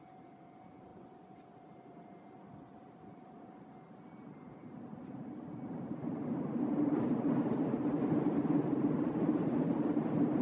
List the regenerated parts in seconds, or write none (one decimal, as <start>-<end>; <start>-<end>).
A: none